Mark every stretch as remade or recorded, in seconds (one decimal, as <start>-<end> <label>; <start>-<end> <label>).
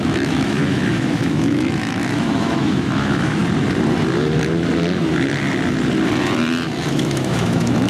0.0-3.4 remade; 3.4-6.9 recorded; 6.9-7.9 remade